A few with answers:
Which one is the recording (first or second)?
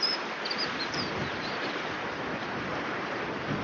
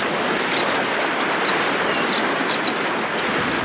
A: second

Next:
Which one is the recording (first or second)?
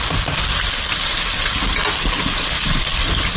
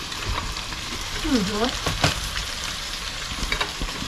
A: first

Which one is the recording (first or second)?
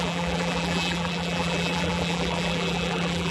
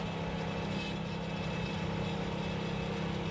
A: second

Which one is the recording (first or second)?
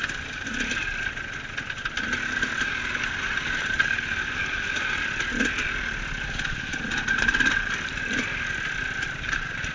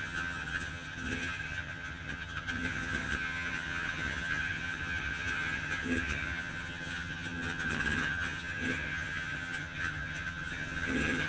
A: first